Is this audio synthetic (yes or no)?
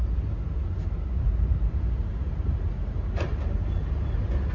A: no